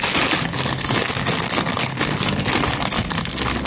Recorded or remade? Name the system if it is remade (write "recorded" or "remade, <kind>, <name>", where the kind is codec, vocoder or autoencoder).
recorded